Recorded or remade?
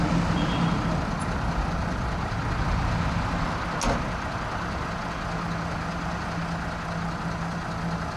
recorded